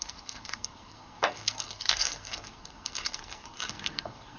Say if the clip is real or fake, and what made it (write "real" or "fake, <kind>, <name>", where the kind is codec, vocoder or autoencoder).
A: fake, codec, SNAC